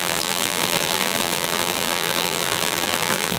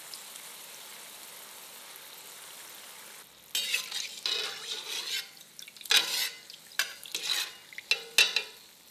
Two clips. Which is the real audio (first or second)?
second